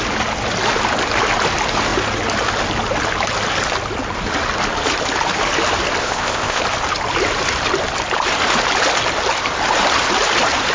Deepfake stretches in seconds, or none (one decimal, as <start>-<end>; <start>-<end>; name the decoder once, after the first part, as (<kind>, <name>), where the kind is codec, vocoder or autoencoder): 6.0-6.6 (codec, ZipCodec)